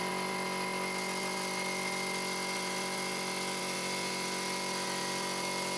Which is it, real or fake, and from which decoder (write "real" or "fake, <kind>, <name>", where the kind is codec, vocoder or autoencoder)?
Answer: real